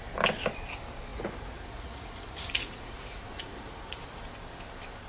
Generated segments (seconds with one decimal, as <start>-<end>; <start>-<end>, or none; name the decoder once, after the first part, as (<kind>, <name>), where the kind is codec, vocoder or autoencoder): 1.1-4.2 (vocoder, Vocos)